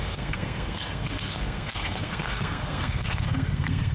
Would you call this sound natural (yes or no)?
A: no